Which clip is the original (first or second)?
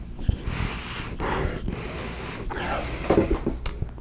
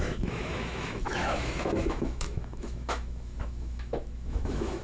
first